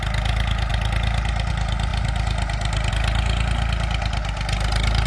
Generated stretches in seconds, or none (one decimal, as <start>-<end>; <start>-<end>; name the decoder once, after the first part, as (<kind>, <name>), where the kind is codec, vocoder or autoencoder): none